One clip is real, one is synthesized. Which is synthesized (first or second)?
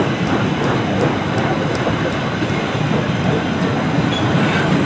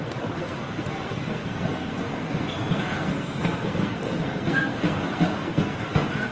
second